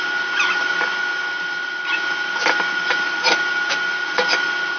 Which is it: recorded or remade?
recorded